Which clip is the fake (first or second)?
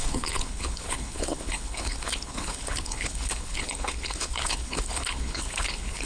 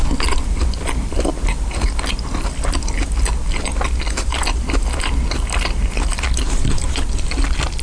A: first